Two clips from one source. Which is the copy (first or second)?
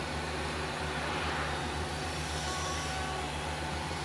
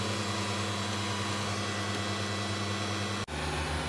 first